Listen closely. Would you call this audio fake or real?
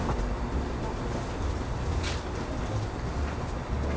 real